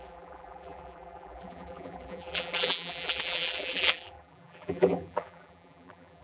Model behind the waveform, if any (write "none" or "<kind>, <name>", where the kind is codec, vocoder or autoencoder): vocoder, BigVGAN v2